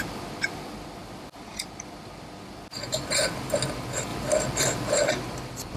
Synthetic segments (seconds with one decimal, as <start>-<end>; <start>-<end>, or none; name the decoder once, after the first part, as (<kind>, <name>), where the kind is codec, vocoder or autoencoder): none